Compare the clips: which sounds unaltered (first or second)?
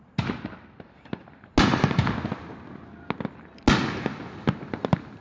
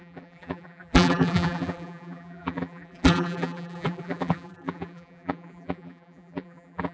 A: first